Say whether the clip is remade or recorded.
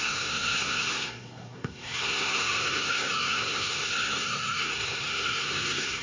remade